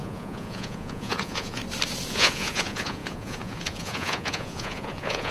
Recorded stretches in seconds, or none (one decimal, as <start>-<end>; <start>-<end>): 1.6-2.1